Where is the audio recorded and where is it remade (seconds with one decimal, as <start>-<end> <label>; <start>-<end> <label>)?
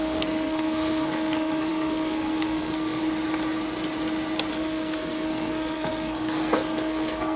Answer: 0.0-3.0 remade; 3.0-4.5 recorded; 4.5-7.4 remade